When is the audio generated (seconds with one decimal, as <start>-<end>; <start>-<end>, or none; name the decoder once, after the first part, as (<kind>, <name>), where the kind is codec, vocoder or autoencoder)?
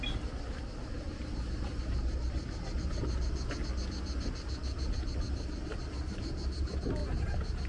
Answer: none